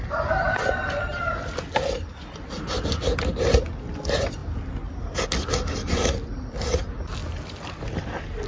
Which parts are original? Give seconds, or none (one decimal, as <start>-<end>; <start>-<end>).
0.0-8.5